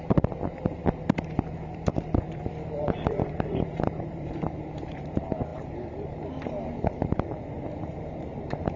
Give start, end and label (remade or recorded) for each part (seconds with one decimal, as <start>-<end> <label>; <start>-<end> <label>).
0.0-8.8 remade